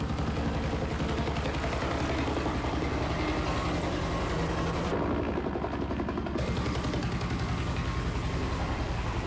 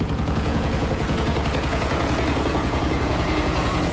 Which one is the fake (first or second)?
second